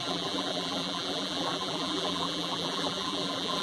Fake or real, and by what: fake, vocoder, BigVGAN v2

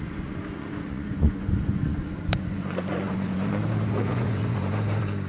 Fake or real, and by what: fake, vocoder, Vocos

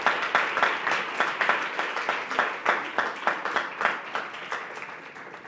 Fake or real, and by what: real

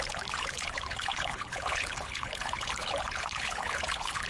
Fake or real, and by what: fake, codec, HILCodec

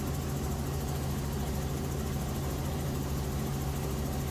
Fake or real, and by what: real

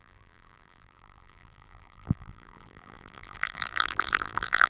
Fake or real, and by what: fake, vocoder, BigVGAN v2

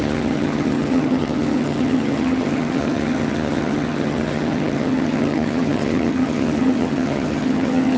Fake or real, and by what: fake, vocoder, HiFi-GAN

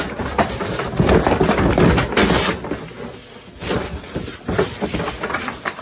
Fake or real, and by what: real